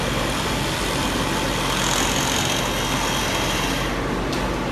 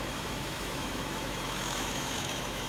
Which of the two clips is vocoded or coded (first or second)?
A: second